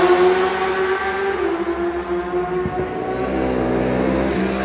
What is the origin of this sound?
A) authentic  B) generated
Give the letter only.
A